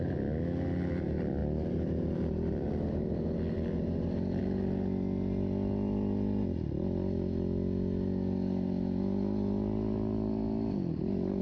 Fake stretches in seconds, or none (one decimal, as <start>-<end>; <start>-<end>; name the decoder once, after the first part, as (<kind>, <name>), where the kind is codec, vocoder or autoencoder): 1.4-4.4 (vocoder, BigVGAN v2)